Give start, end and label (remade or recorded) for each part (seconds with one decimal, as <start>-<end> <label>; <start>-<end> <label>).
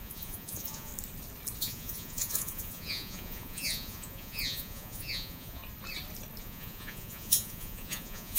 0.0-0.9 remade; 0.9-1.6 recorded; 1.6-5.6 remade; 5.6-6.4 recorded; 6.4-8.4 remade